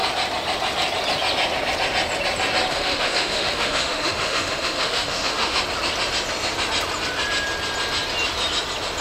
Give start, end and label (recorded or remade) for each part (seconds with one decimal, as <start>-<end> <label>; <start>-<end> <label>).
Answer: 0.0-2.7 recorded; 2.7-5.6 remade; 5.6-9.0 recorded